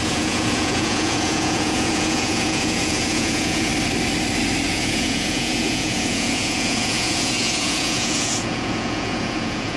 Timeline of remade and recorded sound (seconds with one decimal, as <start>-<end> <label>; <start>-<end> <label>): 0.0-3.7 remade; 3.7-4.7 recorded; 4.7-9.8 remade